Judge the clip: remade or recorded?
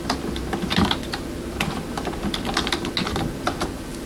recorded